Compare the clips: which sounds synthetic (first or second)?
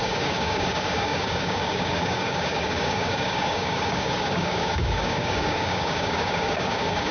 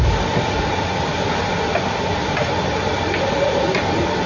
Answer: first